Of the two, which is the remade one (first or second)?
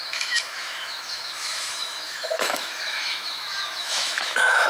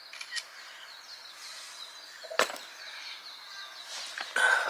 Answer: first